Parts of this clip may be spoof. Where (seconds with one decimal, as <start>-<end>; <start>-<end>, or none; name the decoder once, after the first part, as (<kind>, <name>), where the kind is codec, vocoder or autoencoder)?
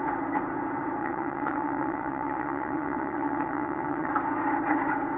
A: 1.0-4.1 (vocoder, WaveNeXt)